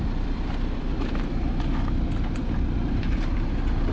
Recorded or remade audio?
remade